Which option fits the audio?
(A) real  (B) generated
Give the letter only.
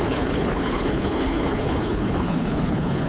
B